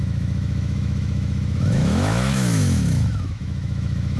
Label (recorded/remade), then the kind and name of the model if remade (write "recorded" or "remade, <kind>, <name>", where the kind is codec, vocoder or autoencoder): remade, autoencoder, DAC-VAE